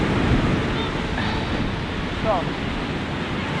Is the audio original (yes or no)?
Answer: yes